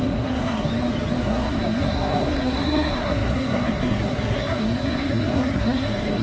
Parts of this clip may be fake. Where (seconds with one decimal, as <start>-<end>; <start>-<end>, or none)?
0.0-0.7; 1.2-6.2